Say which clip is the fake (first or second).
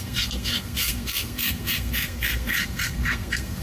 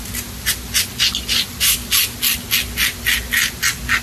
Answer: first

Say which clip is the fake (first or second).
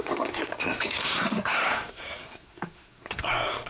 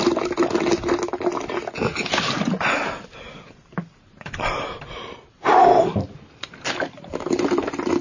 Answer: first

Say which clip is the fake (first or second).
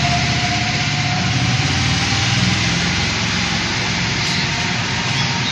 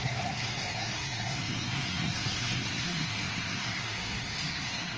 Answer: second